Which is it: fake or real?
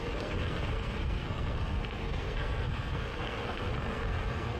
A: fake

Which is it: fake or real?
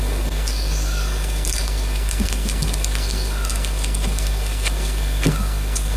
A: fake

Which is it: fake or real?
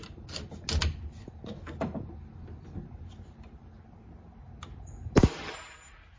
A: real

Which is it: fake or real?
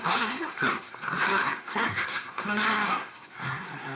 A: fake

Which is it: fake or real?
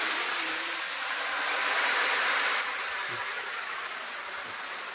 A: real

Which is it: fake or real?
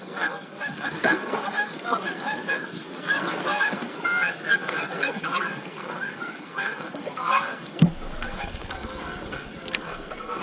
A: fake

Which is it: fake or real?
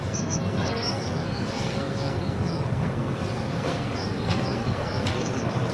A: fake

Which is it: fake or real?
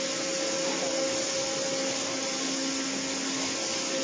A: real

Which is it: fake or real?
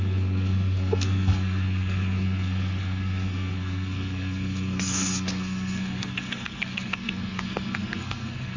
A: fake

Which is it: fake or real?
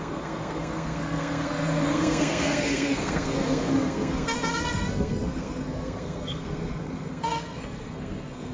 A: fake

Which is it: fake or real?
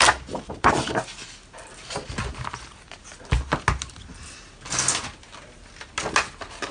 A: real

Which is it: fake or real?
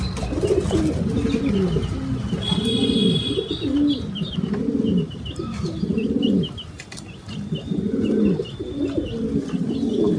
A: real